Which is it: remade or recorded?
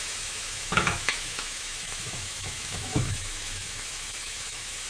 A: remade